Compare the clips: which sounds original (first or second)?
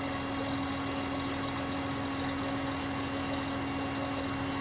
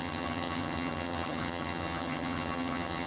first